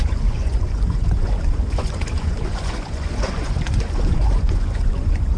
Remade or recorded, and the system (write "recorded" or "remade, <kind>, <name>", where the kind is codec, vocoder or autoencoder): remade, vocoder, Vocos